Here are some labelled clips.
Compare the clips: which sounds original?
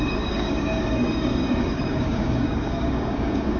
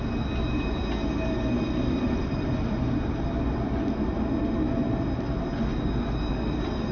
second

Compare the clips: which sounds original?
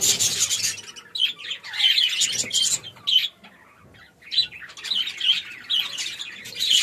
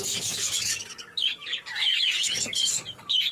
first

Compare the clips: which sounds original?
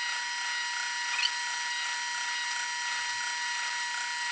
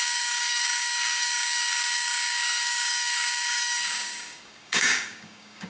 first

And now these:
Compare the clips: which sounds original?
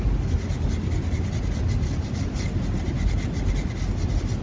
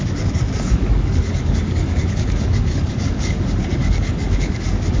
first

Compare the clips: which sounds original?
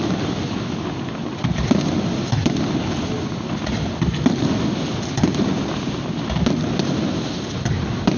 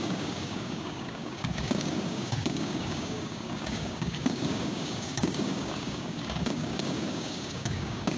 first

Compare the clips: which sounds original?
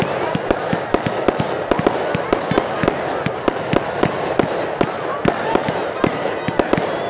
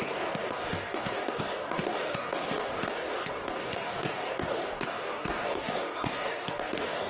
first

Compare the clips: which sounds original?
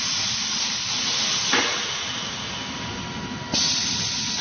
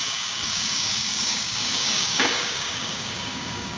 first